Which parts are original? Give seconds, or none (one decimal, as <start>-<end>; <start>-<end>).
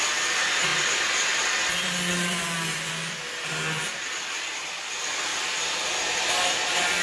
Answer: 0.7-1.7